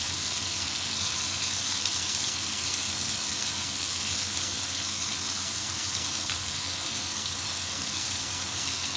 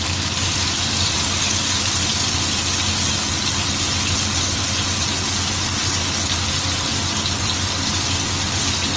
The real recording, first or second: second